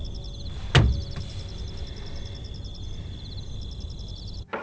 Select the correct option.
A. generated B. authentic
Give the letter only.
B